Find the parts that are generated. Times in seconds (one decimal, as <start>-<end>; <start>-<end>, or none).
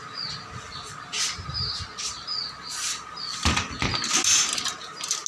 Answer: none